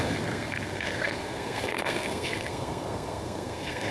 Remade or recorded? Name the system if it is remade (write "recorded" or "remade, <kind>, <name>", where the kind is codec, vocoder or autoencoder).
remade, codec, SNAC